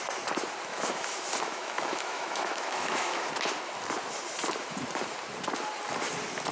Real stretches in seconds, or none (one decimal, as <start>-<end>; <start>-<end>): 0.0-0.7; 3.3-6.5